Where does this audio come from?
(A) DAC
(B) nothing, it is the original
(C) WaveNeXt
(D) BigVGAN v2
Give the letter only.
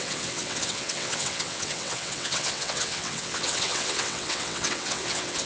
C